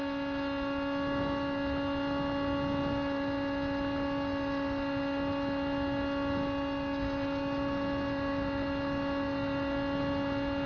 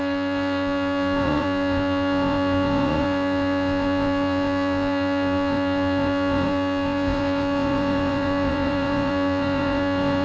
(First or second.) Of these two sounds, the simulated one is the second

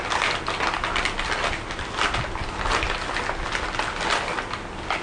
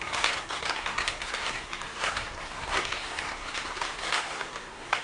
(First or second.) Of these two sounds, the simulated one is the second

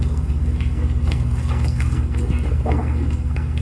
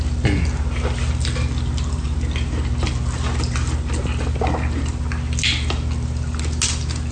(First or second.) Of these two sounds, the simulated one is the first